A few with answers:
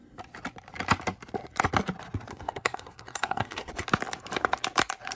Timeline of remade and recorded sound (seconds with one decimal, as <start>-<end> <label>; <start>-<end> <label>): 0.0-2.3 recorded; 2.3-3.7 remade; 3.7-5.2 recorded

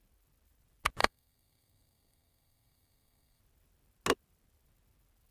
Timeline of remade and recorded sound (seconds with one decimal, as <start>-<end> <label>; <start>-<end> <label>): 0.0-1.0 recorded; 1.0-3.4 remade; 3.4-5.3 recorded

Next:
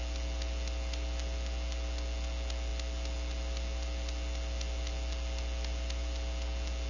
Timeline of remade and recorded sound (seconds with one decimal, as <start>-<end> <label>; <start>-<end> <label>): 0.0-6.9 recorded